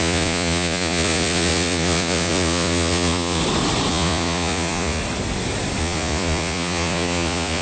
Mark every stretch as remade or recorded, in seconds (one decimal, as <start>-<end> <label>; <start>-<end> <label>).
0.0-3.4 remade; 3.4-3.9 recorded; 3.9-5.0 remade; 5.0-5.8 recorded; 5.8-7.6 remade